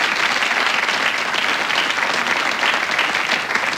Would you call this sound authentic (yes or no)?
yes